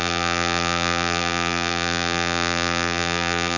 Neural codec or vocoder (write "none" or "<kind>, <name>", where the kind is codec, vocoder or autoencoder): vocoder, BigVGAN v2